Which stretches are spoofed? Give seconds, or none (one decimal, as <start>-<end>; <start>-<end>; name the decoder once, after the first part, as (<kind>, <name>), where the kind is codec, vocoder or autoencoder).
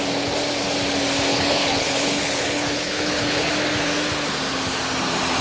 1.3-3.5 (codec, HILCodec)